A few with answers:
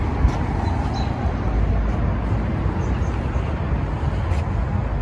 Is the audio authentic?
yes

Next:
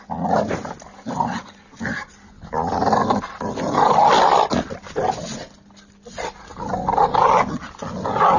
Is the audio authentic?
yes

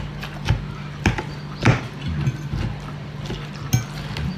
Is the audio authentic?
yes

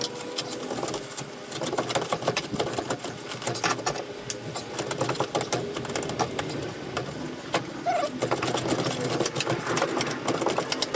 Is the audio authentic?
yes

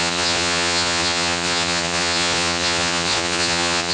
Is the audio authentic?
no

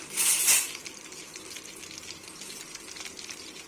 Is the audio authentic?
yes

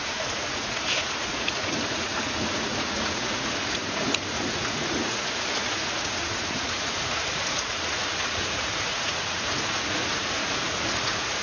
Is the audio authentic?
no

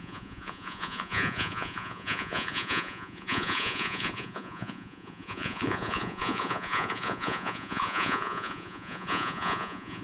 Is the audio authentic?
no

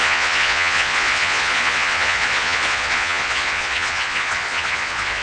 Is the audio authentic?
no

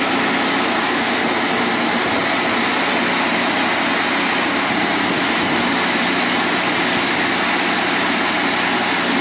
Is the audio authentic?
yes